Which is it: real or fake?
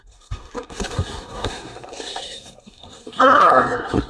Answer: fake